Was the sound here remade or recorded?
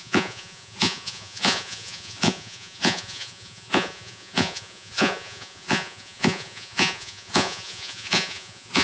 remade